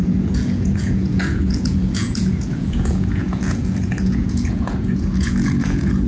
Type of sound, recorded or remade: remade